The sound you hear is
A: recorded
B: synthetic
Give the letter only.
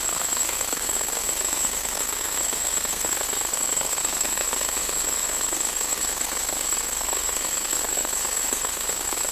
B